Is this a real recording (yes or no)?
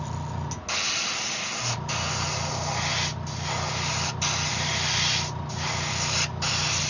yes